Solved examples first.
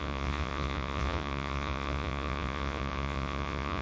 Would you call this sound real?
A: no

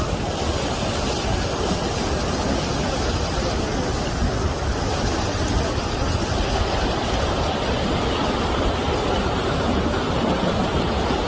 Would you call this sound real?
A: yes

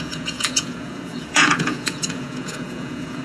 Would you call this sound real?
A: no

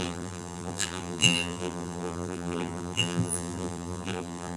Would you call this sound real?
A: no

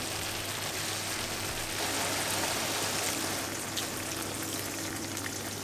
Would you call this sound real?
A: yes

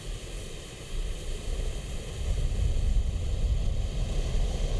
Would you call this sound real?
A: yes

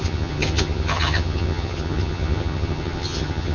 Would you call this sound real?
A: no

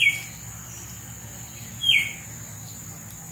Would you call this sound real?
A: yes